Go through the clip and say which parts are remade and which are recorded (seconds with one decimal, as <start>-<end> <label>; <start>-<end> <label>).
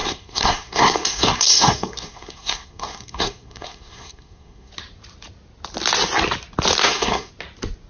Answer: 0.0-4.7 remade; 4.7-6.8 recorded; 6.8-7.3 remade; 7.3-7.9 recorded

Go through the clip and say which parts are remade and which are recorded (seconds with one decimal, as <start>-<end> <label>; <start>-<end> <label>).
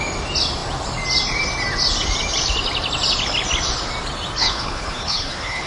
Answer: 0.0-4.4 recorded; 4.4-5.7 remade